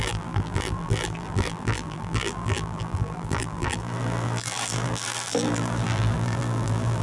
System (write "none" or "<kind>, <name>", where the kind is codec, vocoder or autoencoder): vocoder, BigVGAN v2